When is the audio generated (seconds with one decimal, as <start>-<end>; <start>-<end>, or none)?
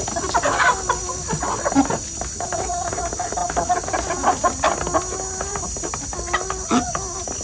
none